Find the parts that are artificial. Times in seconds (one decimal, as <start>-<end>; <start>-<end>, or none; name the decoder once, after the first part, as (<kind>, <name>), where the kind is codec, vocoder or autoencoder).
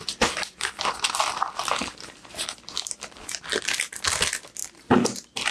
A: 1.6-2.4 (vocoder, BigVGAN v2); 4.6-5.5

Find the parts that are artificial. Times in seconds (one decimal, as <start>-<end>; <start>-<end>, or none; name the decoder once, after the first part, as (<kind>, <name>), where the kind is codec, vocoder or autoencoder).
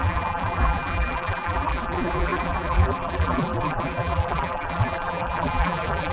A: 0.0-6.1 (vocoder, BigVGAN v2)